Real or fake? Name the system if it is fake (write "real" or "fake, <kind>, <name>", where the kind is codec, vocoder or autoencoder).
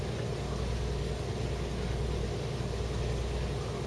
real